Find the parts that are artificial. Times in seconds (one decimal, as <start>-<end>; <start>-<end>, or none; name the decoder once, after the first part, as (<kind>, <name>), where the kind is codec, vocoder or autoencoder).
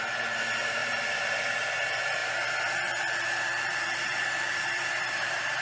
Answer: 0.8-1.7 (vocoder, BigVGAN v2); 2.2-5.6